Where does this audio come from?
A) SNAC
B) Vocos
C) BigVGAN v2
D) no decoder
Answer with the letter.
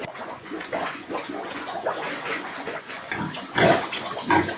B